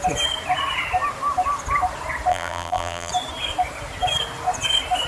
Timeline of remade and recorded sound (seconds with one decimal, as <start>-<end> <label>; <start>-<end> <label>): 0.0-2.3 recorded; 2.3-3.1 remade; 3.1-5.1 recorded